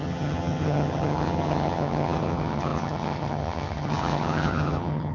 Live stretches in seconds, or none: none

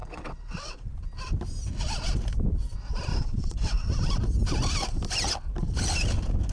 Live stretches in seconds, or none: 0.9-3.1; 3.9-6.5

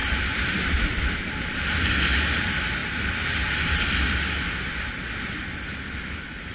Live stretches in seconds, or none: 1.9-6.5

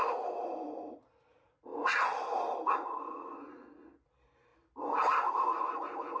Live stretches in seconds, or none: 0.0-6.2

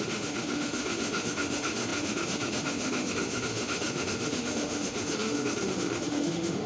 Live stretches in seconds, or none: none

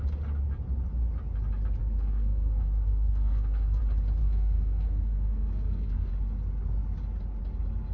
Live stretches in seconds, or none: 0.0-1.8; 3.8-4.2; 6.1-7.9